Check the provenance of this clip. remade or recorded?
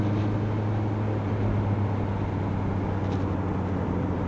recorded